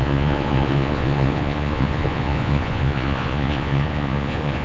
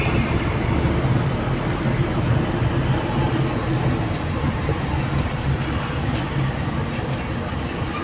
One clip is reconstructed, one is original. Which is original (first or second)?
second